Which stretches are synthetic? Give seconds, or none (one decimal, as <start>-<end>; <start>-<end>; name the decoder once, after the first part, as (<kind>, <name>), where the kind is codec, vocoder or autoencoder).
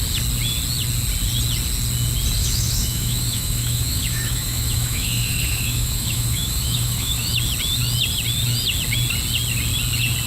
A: 2.4-7.3 (autoencoder, DAC-VAE)